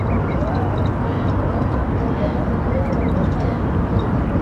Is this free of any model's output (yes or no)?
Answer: yes